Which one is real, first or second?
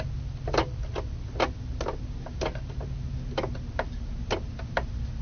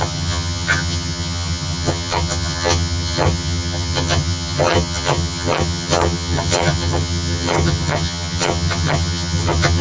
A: first